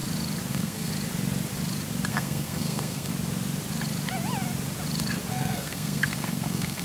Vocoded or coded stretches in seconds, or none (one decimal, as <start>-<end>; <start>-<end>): 0.5-0.9; 2.1-3.1; 5.3-6.8